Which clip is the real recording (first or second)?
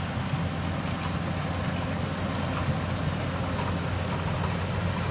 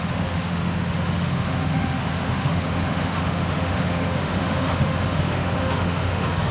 first